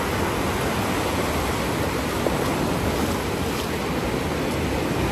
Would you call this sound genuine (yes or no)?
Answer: yes